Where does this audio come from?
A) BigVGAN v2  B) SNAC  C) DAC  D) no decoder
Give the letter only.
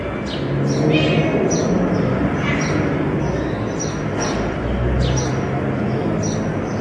D